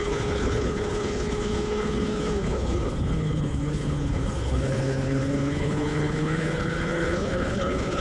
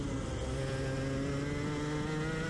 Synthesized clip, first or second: first